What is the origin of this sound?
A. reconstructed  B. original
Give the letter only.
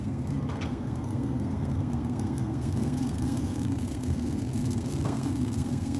A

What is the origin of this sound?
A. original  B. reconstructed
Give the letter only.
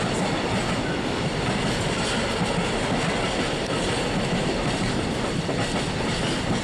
A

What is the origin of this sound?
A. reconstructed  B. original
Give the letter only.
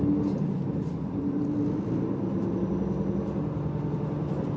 B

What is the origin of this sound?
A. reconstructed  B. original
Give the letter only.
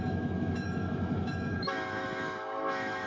A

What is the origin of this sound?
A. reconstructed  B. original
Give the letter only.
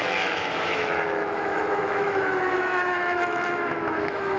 A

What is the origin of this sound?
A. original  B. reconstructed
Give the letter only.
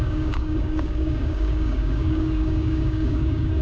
B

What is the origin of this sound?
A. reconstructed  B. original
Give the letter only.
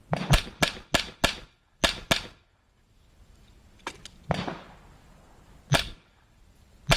B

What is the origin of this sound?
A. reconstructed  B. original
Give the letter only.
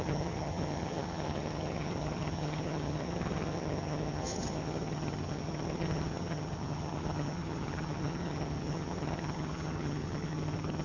A